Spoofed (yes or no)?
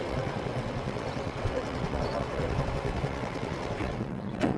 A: yes